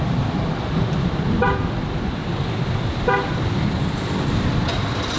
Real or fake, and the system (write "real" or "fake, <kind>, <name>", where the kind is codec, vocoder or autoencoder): real